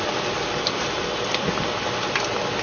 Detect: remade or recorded recorded